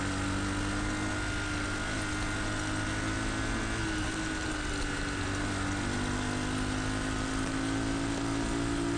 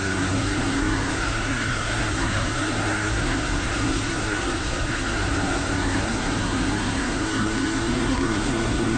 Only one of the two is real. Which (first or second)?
first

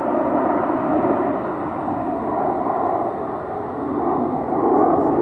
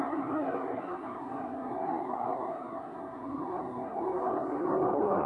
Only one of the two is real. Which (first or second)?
first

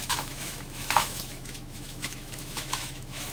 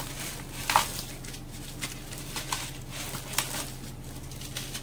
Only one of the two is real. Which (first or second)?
second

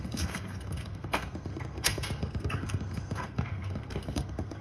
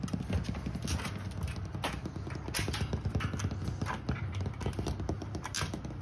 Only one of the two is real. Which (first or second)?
second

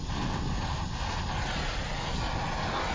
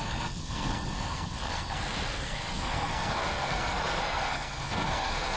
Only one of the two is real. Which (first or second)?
first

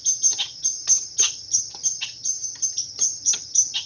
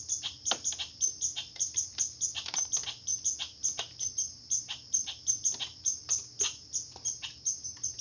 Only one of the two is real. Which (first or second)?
second